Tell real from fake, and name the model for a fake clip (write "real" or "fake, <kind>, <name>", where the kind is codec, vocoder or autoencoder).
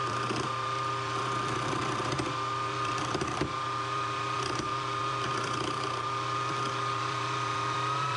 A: fake, vocoder, BigVGAN v2